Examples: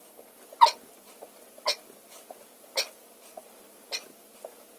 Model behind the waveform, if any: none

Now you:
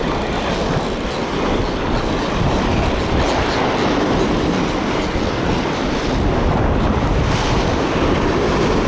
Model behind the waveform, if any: none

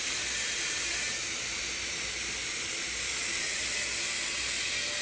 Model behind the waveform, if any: none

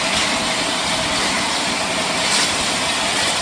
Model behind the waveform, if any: none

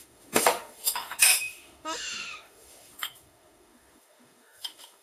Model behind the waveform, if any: autoencoder, DAC-VAE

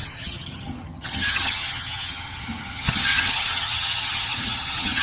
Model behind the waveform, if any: vocoder, HiFi-GAN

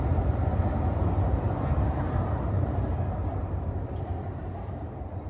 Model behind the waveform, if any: vocoder, BigVGAN v2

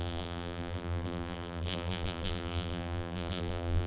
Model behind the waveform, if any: vocoder, BigVGAN v2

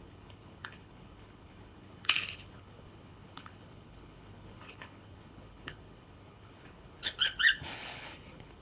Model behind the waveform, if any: codec, HILCodec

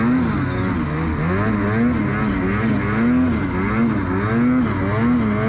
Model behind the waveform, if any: none